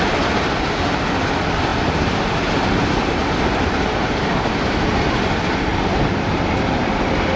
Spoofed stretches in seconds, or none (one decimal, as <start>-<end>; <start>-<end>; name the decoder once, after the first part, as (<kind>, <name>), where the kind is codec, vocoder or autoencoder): 0.0-5.7 (vocoder, BigVGAN v2); 6.8-7.4